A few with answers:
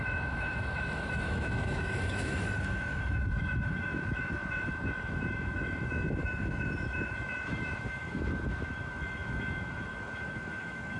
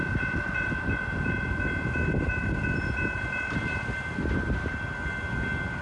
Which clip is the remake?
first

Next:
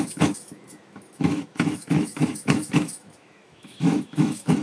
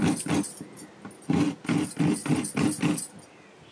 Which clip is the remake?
first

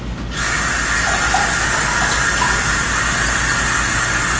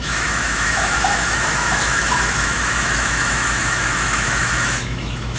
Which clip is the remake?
second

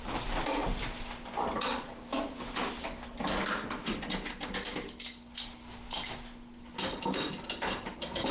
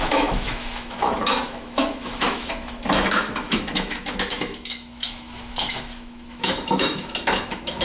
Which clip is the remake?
second